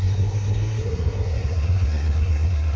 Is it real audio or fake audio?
fake